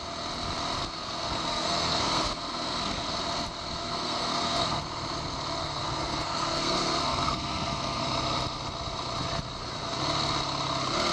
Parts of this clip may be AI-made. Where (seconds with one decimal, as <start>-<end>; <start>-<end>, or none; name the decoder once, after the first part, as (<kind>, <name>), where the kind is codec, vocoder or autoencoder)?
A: 0.8-3.2 (codec, SNAC); 3.8-4.8; 5.6-8.0